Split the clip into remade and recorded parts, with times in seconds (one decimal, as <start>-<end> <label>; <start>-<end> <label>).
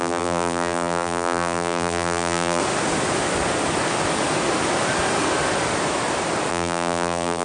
0.0-2.6 remade; 2.6-6.5 recorded; 6.5-7.4 remade